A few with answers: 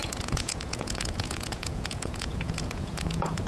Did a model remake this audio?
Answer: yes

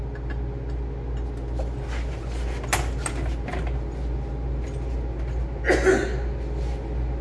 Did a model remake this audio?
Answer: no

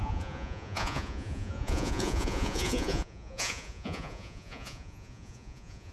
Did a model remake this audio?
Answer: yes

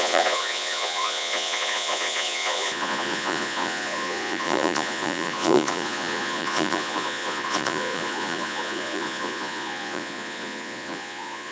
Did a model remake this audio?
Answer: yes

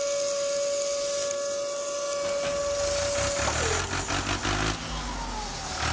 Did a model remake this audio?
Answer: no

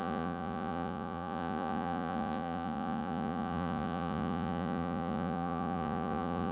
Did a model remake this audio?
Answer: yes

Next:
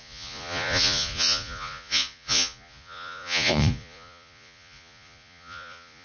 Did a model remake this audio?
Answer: yes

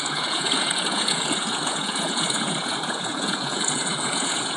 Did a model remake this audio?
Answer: yes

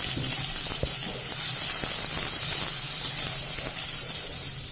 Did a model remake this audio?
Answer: no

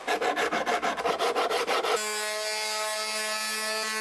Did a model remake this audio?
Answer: no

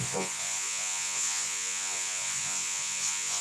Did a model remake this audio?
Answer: yes